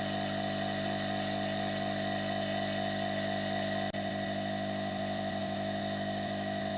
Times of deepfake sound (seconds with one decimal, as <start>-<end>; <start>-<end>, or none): 5.4-6.8